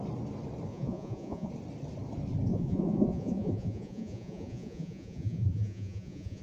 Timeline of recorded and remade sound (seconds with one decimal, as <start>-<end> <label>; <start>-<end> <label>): 0.0-0.7 recorded; 0.7-1.5 remade; 1.5-2.5 recorded; 2.5-6.4 remade